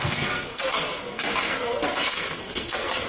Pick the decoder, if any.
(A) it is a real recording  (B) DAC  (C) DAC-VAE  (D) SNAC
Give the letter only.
D